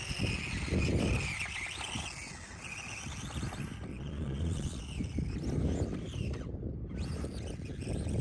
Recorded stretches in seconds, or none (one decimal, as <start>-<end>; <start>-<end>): 0.0-3.9; 4.8-8.2